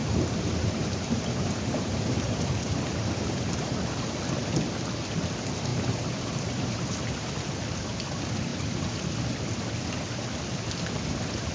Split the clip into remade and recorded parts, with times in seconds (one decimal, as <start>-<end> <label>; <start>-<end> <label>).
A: 0.0-3.7 remade; 3.7-5.7 recorded; 5.7-7.3 remade; 7.3-11.5 recorded